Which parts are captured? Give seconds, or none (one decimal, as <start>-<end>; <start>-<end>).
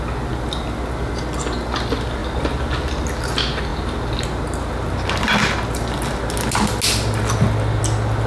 0.0-8.3